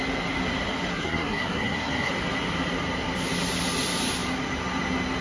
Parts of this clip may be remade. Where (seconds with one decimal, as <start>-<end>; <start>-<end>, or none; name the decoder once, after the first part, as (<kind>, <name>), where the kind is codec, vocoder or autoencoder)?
0.9-2.1 (codec, SNAC)